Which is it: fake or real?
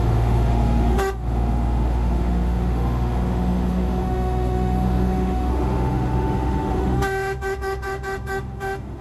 fake